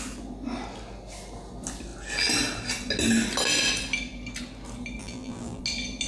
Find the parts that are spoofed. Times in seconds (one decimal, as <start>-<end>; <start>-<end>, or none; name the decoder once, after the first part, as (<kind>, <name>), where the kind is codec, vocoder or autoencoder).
5.0-5.6 (vocoder, BigVGAN v2)